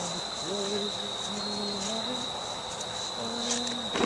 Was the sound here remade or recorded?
recorded